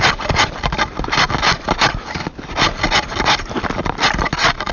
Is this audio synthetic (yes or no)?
no